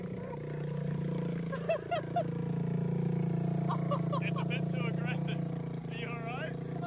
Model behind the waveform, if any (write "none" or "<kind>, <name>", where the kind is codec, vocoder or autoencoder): none